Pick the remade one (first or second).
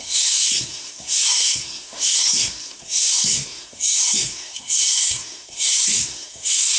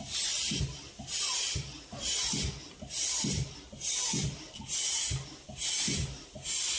first